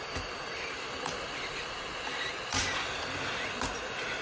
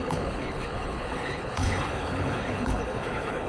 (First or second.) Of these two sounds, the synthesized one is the second